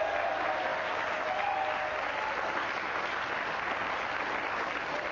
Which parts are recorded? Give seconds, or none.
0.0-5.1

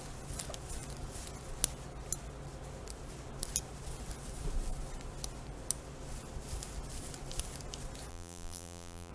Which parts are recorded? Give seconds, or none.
0.0-8.1